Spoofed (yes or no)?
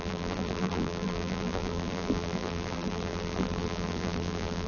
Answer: yes